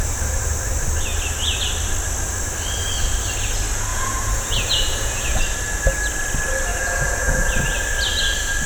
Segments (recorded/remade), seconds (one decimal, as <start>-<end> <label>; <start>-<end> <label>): 0.0-3.9 recorded; 3.9-5.4 remade; 5.4-6.7 recorded; 6.7-7.5 remade; 7.5-8.7 recorded